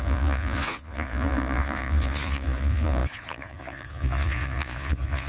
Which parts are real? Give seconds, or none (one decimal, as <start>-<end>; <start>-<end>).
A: none